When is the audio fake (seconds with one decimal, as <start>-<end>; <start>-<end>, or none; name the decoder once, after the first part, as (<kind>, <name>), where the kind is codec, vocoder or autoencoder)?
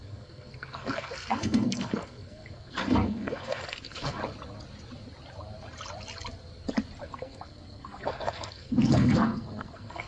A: 0.0-4.2 (codec, SNAC); 7.0-10.1